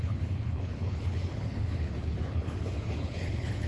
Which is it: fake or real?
fake